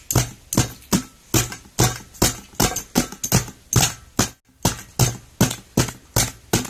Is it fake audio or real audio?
real